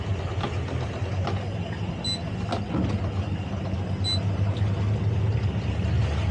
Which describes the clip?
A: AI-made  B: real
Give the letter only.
B